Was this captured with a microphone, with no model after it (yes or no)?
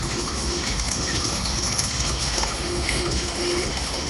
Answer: no